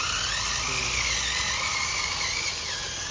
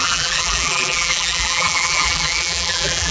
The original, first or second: first